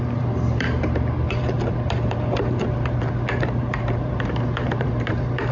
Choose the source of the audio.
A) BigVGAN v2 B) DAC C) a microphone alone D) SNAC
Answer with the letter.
A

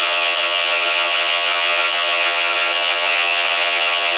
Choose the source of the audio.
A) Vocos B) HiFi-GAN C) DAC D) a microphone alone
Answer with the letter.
B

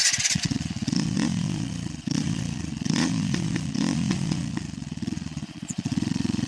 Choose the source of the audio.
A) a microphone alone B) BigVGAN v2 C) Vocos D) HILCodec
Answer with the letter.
C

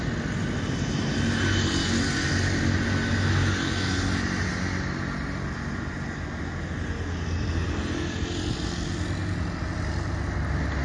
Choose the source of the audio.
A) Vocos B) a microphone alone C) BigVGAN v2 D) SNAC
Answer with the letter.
B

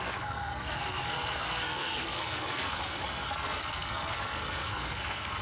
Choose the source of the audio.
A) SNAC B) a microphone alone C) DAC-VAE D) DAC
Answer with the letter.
A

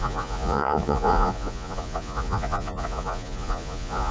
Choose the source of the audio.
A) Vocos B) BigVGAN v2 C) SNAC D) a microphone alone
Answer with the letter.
A